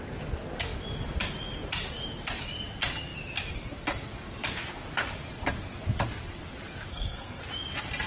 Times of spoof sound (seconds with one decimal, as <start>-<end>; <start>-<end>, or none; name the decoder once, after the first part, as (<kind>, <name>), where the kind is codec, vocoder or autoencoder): 6.9-7.4 (codec, SNAC)